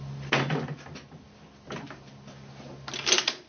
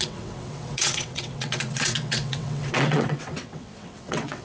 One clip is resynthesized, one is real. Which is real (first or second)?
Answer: first